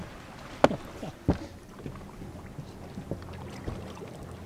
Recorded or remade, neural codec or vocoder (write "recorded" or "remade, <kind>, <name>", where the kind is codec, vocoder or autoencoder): recorded